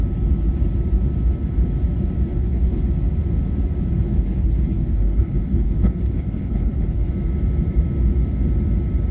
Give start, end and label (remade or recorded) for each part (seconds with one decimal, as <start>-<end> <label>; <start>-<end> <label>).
0.0-2.3 recorded; 2.3-2.8 remade; 2.8-4.1 recorded; 4.1-7.1 remade; 7.1-9.1 recorded